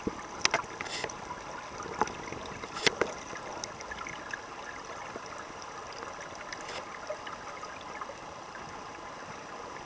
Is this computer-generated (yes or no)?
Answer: no